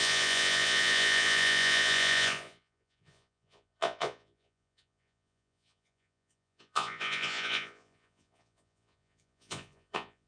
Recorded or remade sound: remade